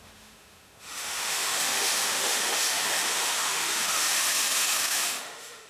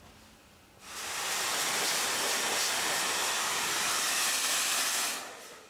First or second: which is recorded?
second